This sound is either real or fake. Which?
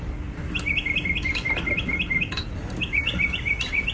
real